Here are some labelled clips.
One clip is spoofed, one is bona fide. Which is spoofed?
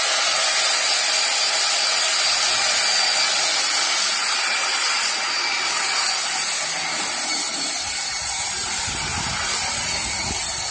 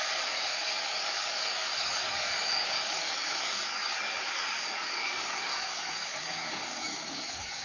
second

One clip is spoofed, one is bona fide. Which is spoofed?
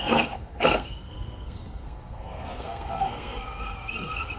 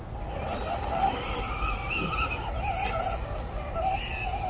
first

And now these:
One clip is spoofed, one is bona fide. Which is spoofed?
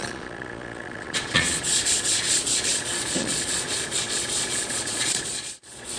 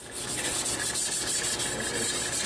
first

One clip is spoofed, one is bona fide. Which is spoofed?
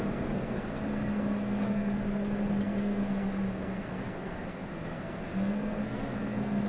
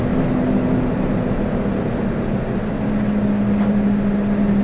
first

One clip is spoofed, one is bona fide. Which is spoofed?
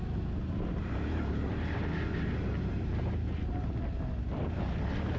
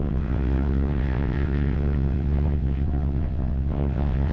second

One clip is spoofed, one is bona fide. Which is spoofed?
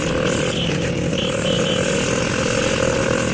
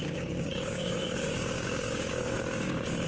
second